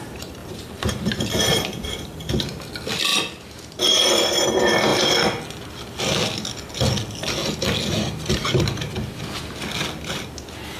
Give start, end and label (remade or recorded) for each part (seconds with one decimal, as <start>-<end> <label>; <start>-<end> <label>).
0.0-0.4 recorded; 0.4-2.3 remade; 2.3-10.8 recorded